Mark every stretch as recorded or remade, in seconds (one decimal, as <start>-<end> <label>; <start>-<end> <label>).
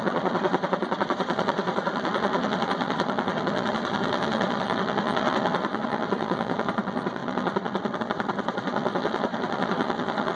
0.0-10.4 remade